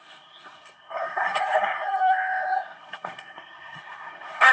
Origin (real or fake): fake